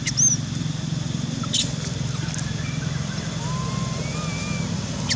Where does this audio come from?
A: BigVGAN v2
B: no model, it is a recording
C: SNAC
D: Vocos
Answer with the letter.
B